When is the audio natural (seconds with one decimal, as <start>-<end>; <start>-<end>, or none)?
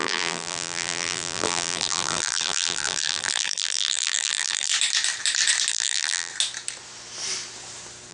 4.7-5.7; 6.3-8.1